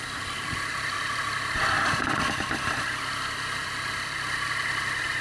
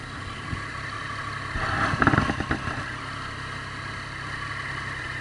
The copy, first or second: first